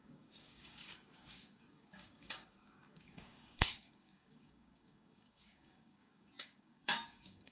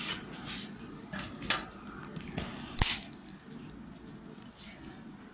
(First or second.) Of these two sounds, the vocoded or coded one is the first